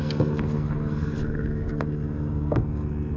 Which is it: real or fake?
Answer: fake